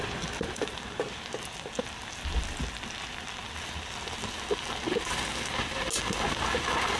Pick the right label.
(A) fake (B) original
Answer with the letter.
B